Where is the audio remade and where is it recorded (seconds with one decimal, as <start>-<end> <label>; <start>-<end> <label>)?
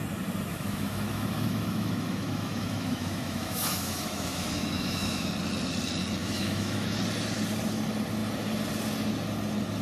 0.0-0.5 recorded; 0.5-5.3 remade; 5.3-6.2 recorded; 6.2-7.0 remade; 7.0-9.8 recorded